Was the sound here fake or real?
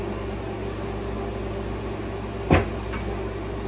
real